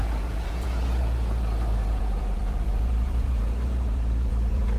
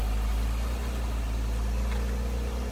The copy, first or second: first